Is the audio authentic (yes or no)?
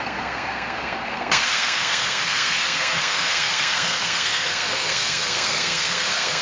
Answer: no